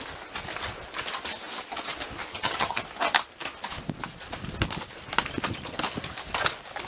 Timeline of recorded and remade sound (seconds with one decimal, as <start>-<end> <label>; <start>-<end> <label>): 0.0-2.3 recorded; 2.3-2.8 remade; 2.8-6.9 recorded